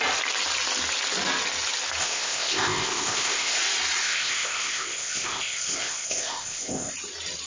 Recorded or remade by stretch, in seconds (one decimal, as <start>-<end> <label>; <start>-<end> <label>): 0.0-2.0 recorded; 2.0-3.6 remade; 3.6-4.0 recorded; 4.0-6.9 remade; 6.9-7.5 recorded